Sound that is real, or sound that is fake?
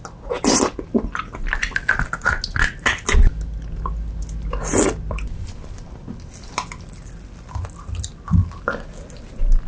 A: real